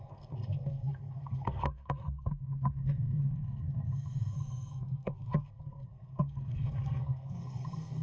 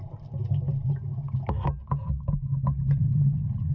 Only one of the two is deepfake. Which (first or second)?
first